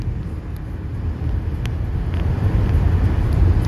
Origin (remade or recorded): recorded